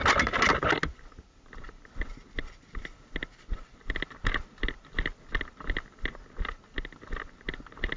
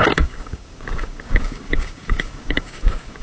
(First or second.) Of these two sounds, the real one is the first